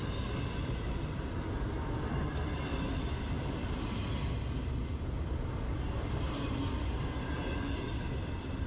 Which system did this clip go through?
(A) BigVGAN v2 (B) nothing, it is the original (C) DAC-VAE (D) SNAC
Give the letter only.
B